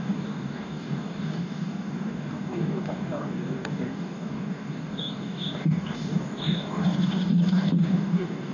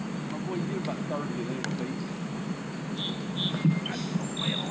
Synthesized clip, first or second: first